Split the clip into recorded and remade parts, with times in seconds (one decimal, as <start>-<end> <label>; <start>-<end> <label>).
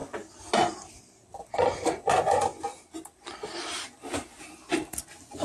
0.0-5.4 recorded